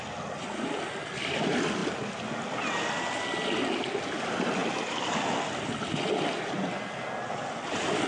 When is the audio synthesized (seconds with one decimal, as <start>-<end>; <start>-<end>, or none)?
none